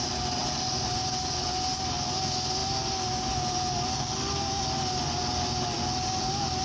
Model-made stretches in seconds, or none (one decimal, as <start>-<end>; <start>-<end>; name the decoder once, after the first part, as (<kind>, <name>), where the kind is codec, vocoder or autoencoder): none